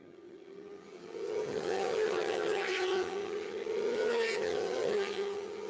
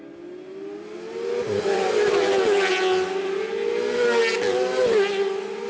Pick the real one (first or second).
second